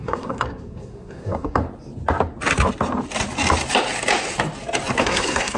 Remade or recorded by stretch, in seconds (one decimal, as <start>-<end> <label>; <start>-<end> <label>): 0.0-1.6 remade; 1.6-5.0 recorded; 5.0-5.6 remade